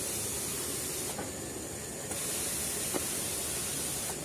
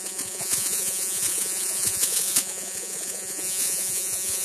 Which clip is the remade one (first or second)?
second